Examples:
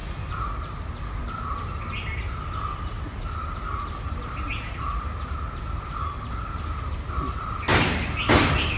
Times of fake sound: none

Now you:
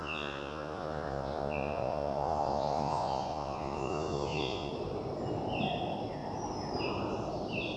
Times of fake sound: 0.0-4.7 (vocoder, Vocos)

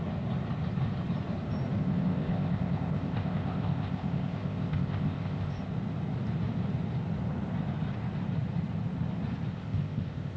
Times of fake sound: 1.8-5.6 (codec, ZipCodec); 9.5-10.4

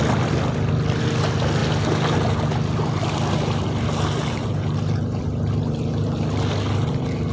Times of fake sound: none